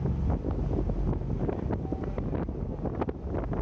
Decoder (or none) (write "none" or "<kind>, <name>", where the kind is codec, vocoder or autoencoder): none